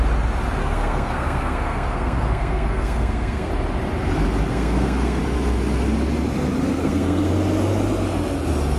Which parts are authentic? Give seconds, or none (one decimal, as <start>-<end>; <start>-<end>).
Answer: 0.0-0.6; 3.5-4.5; 5.2-6.8; 7.3-8.8